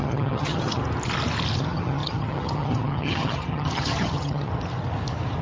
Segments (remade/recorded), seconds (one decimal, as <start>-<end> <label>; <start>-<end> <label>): 0.0-0.8 remade; 0.8-1.6 recorded; 1.6-4.5 remade; 4.5-5.4 recorded